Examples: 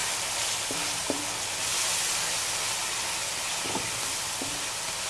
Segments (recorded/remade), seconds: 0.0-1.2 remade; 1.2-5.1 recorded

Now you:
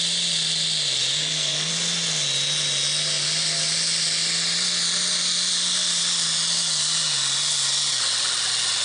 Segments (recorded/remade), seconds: 0.0-1.2 recorded; 1.2-1.7 remade; 1.7-8.8 recorded

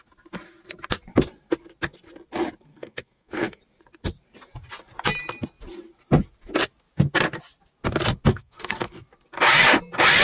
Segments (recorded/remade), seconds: 0.0-2.7 recorded; 2.7-3.6 remade; 3.6-8.3 recorded; 8.3-9.0 remade; 9.0-10.2 recorded

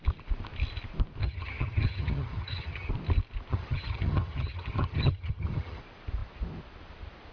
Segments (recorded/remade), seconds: 0.0-1.2 recorded; 1.2-2.9 remade; 2.9-3.5 recorded; 3.5-5.8 remade; 5.8-7.3 recorded

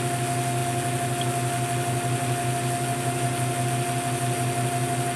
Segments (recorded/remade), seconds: 0.0-5.2 recorded